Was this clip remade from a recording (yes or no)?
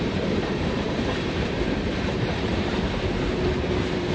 yes